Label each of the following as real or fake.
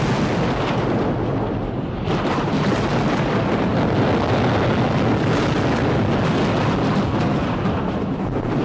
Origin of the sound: real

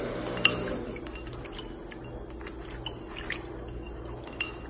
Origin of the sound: real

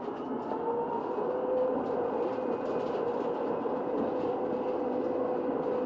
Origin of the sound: real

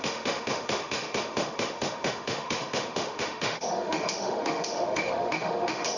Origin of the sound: fake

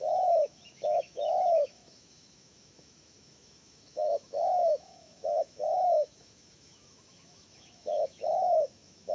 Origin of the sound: fake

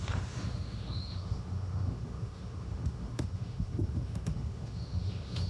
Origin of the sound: fake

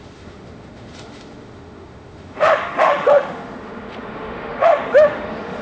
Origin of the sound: fake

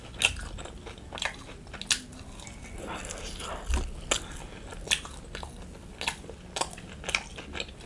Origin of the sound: real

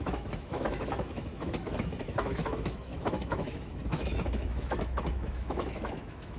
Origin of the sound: fake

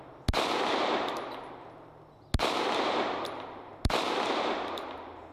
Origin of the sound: real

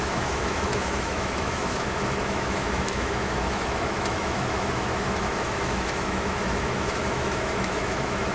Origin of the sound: fake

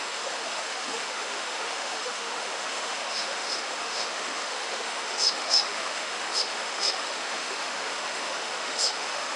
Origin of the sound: fake